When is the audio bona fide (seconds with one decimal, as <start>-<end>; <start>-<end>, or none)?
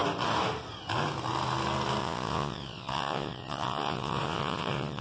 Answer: 0.0-2.0